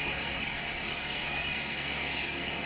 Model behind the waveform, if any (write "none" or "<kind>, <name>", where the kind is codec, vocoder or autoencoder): codec, SNAC